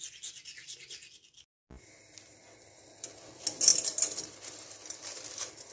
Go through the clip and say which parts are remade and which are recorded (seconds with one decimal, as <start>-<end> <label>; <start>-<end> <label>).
0.0-5.7 recorded